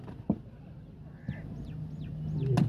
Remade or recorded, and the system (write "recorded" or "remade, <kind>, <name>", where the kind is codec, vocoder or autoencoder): recorded